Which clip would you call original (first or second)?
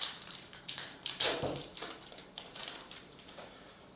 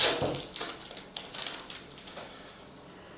second